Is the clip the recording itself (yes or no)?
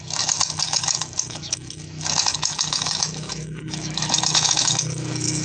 no